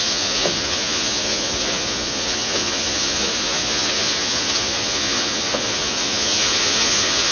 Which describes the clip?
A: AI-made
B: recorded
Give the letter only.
A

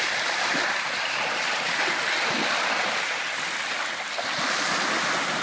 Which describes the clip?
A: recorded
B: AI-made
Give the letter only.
A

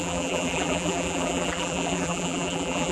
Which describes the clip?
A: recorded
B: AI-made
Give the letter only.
B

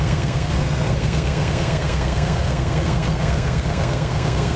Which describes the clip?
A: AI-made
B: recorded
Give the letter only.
A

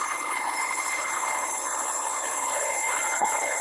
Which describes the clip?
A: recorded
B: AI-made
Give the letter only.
B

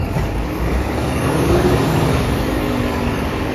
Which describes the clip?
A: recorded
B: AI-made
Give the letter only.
B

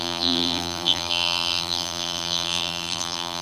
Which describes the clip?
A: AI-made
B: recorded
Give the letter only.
A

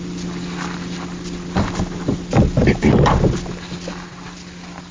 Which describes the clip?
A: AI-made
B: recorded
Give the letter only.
B